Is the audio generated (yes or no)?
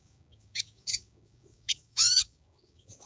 yes